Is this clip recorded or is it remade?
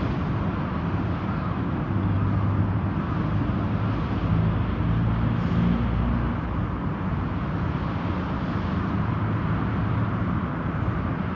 recorded